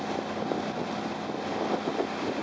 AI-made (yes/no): no